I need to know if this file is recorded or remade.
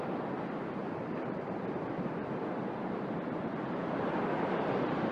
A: remade